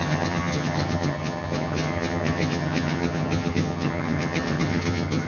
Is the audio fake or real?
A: fake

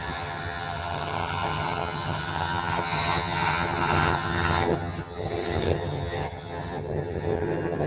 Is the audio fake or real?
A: fake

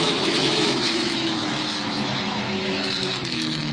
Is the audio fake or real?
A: fake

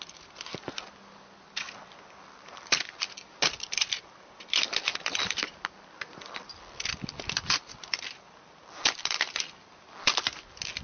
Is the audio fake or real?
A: real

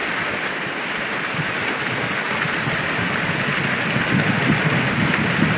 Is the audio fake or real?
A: real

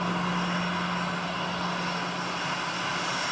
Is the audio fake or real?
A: real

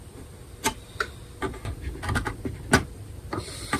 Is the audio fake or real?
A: real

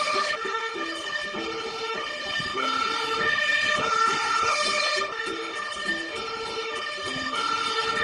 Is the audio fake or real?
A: fake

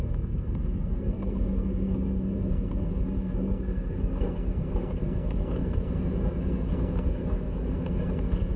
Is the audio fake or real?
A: fake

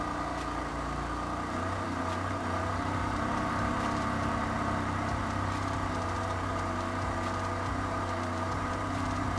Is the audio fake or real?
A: fake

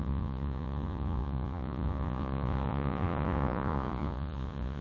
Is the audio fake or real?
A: fake